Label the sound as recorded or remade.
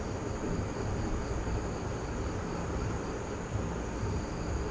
recorded